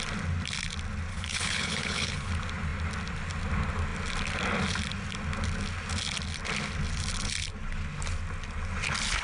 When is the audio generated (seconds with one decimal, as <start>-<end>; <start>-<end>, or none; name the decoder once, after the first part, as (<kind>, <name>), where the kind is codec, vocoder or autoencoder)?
1.1-2.3 (codec, HILCodec)